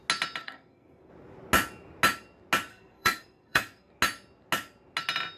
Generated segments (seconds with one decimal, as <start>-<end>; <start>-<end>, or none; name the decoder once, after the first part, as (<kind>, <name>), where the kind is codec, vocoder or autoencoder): 0.4-1.1 (codec, SNAC); 2.7-3.9